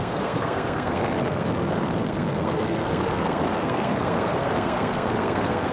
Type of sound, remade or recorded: remade